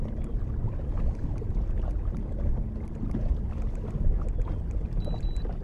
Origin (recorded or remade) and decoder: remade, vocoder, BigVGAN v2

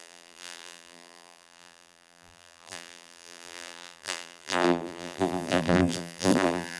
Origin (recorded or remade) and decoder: remade, vocoder, BigVGAN v2